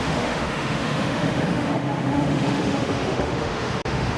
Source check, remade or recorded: remade